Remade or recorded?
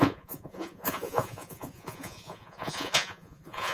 remade